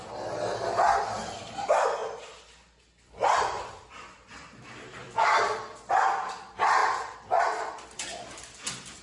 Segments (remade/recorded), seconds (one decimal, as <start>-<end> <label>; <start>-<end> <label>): 0.0-9.0 recorded